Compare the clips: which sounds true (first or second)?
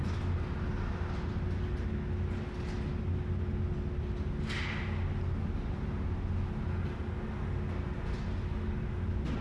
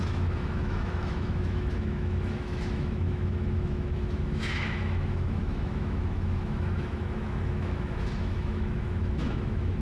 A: first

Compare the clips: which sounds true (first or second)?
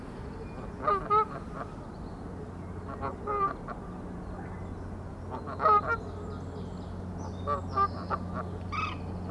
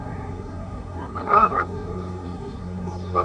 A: first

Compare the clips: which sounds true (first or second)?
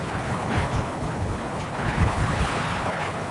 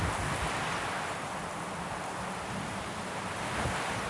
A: second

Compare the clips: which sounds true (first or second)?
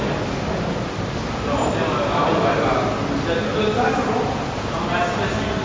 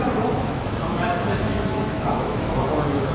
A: first